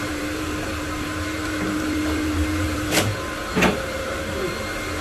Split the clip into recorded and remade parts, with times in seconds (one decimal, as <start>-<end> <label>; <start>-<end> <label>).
0.0-3.1 remade; 3.1-5.0 recorded